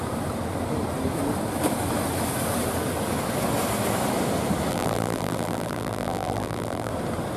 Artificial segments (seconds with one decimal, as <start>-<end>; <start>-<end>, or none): 4.7-6.9